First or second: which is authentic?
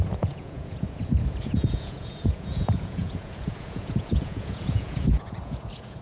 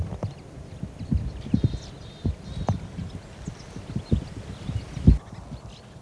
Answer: second